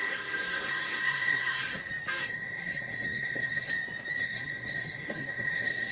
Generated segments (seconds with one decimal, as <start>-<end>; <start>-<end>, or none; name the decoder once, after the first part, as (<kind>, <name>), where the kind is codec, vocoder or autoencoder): 0.0-1.8 (codec, SNAC); 2.2-3.7; 4.2-5.9